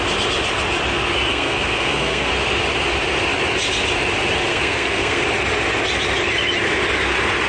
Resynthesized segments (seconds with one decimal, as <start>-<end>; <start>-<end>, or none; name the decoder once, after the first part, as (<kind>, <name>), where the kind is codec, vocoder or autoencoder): 1.3-2.3 (codec, SNAC); 4.5-5.2